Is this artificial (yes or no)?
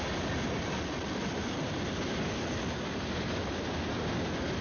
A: no